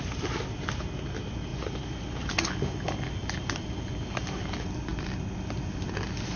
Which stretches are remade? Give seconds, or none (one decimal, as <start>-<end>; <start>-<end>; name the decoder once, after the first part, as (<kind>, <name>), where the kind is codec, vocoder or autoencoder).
1.5-2.3 (vocoder, BigVGAN v2)